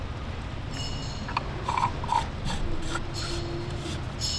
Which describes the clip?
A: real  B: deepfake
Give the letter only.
A